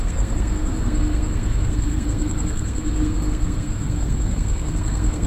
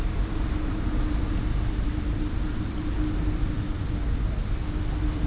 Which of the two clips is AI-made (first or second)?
first